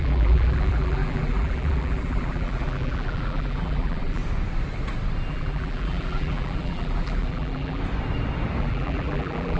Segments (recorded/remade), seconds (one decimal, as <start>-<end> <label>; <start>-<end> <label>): 0.0-4.2 remade; 4.2-5.3 recorded; 5.3-7.8 remade; 7.8-8.6 recorded; 8.6-9.6 remade

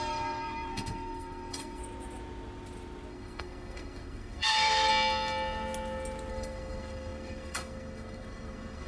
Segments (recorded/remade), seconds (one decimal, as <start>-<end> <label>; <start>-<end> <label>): 0.0-1.8 remade; 1.8-3.1 recorded; 3.1-4.9 remade; 4.9-6.3 recorded; 6.3-8.9 remade

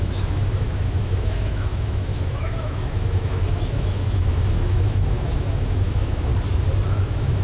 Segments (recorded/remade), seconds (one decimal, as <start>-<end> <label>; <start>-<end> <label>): 0.0-6.3 remade; 6.3-6.9 recorded; 6.9-7.4 remade

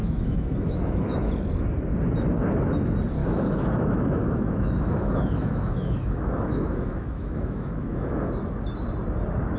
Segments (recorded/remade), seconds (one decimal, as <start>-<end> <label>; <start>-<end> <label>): 0.0-1.3 remade; 1.3-3.2 recorded; 3.2-8.3 remade; 8.3-9.6 recorded

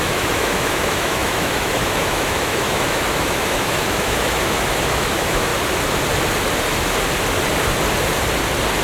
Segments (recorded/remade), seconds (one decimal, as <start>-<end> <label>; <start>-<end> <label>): 0.0-5.5 remade; 5.5-8.8 recorded

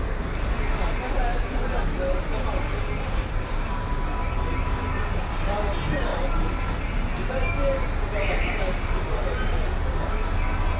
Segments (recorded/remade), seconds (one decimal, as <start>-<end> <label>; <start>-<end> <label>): 0.0-10.8 recorded

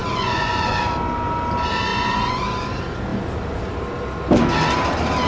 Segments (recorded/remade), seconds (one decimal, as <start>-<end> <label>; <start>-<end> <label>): 0.0-0.8 remade; 0.8-1.9 recorded; 1.9-2.7 remade; 2.7-5.3 recorded